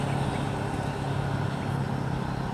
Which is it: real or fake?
real